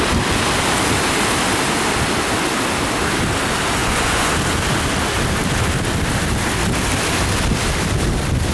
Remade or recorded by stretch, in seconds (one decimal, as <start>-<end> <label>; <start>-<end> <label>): 0.0-3.8 recorded; 3.8-4.3 remade; 4.3-8.5 recorded